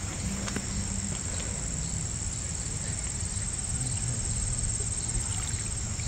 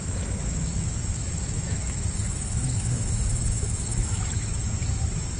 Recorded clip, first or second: first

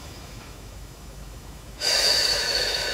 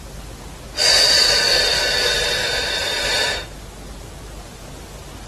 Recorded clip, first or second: second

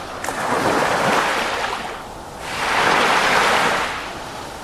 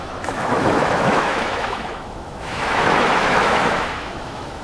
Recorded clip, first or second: first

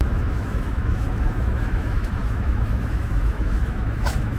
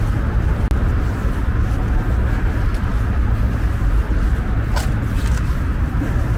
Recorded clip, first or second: second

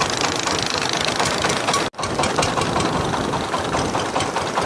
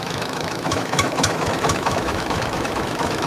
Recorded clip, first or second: first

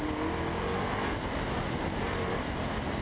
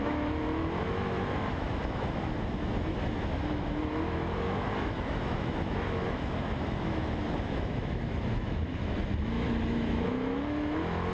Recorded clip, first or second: first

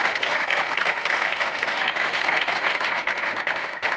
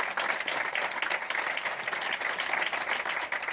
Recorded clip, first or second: second